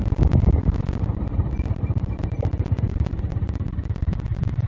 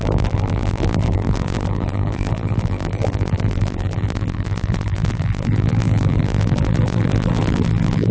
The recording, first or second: first